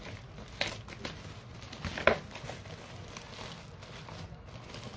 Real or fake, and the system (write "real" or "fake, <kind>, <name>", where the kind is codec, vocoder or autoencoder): real